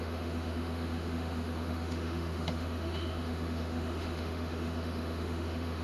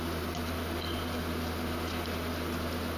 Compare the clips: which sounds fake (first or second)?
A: first